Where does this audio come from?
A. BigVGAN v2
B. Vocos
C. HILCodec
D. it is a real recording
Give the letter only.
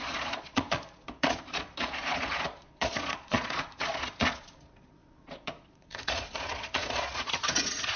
B